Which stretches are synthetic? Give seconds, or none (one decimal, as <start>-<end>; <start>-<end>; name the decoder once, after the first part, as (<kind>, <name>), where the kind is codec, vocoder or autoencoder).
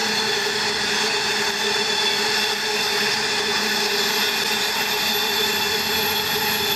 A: none